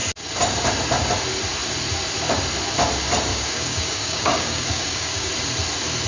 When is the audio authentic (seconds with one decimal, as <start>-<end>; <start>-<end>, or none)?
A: 0.0-3.3; 5.3-6.1